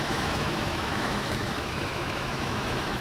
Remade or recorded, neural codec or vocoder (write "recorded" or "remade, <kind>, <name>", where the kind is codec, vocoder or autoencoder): remade, autoencoder, DAC-VAE